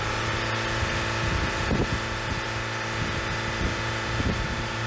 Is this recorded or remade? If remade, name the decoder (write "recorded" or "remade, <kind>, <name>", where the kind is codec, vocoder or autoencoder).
recorded